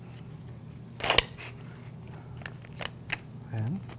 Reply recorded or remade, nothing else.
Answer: recorded